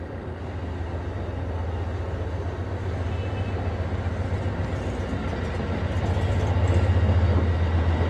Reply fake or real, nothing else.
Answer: real